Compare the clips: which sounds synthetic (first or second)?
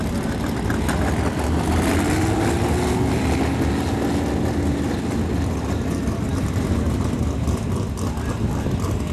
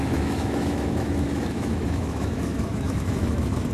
second